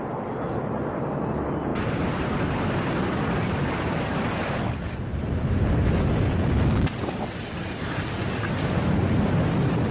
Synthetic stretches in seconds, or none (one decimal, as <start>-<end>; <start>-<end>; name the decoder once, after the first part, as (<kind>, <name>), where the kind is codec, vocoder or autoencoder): none